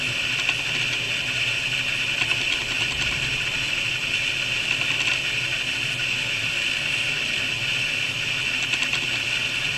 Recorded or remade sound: recorded